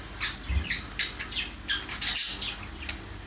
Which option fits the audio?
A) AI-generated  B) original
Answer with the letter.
B